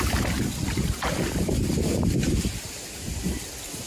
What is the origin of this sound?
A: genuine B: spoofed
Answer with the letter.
A